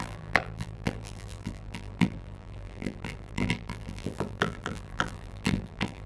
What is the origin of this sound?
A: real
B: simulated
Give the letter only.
B